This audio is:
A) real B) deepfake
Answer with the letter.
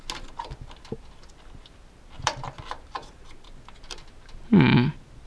A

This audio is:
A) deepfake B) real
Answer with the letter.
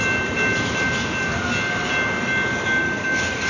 B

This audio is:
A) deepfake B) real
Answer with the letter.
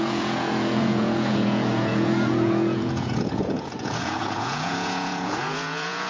A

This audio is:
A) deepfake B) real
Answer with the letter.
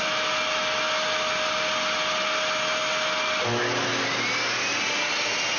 B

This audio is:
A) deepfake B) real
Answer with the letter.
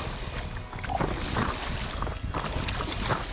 B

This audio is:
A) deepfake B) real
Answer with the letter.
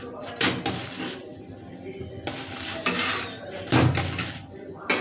B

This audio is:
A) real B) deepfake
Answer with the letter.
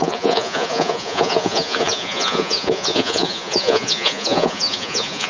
B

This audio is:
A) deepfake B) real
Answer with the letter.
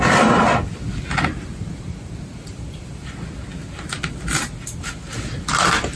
B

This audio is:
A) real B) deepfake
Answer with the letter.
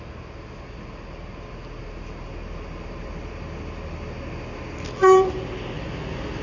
A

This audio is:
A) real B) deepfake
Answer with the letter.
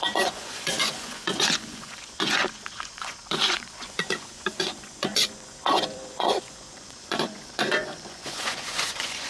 B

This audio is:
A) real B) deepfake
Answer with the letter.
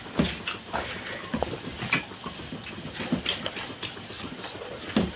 A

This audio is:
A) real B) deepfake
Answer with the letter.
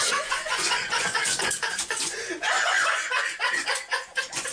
B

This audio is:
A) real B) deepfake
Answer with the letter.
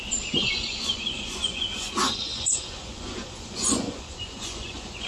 B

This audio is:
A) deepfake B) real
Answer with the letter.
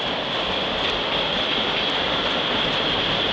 B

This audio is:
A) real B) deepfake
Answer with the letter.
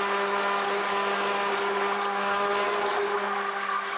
A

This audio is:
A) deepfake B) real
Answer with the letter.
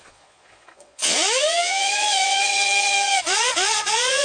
A